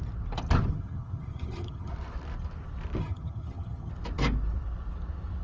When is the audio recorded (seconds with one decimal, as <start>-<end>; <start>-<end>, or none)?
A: 0.0-0.7; 1.9-3.0; 3.9-5.4